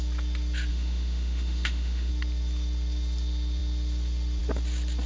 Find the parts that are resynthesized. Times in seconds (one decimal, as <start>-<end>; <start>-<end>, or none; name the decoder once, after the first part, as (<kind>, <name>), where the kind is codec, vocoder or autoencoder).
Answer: 0.7-2.1 (autoencoder, DAC-VAE)

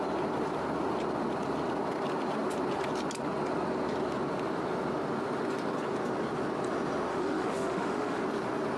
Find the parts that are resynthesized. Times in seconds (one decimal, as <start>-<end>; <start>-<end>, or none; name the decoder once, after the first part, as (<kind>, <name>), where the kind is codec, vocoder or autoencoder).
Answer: 7.1-8.2 (autoencoder, DAC-VAE)

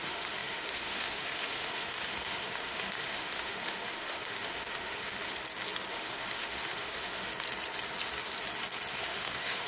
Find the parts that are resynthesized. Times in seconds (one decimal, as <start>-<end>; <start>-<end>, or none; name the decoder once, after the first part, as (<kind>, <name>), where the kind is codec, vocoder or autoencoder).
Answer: 0.0-5.4 (autoencoder, DAC-VAE); 5.9-7.3; 8.9-9.7

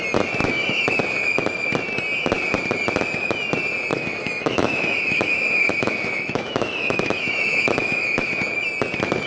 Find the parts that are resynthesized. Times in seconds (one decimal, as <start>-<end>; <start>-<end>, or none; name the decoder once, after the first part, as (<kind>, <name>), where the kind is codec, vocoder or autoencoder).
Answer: 0.4-1.0 (autoencoder, DAC-VAE); 3.9-8.4

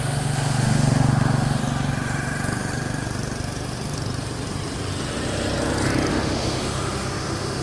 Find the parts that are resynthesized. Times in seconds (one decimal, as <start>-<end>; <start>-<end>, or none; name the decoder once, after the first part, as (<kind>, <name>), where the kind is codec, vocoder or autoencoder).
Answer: 0.0-1.6 (autoencoder, DAC-VAE); 6.1-7.6